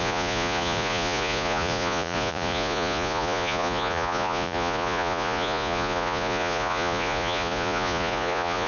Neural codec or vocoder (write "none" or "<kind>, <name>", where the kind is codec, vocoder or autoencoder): vocoder, Vocos